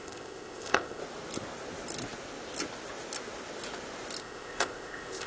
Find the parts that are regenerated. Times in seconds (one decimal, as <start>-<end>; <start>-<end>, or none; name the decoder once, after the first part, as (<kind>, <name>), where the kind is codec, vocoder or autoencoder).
0.0-1.0 (codec, ZipCodec); 4.2-5.3